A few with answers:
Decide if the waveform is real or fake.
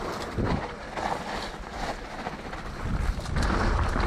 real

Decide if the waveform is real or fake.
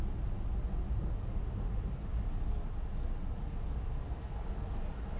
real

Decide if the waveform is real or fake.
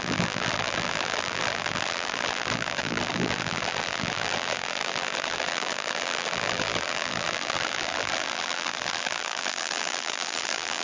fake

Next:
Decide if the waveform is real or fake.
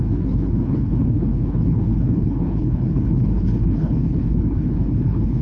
fake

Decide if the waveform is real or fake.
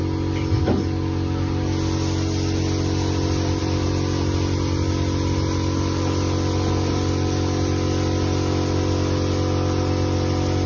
real